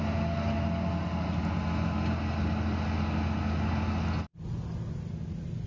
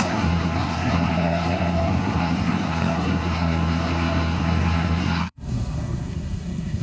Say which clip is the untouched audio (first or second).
first